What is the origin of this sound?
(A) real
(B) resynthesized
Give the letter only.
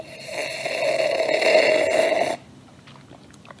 A